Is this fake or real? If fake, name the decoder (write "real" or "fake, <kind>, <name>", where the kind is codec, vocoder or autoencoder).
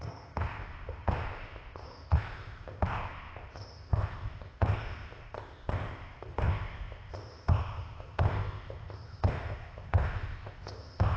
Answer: fake, codec, ZipCodec